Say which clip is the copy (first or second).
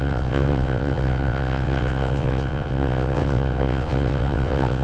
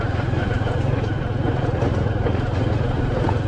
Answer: first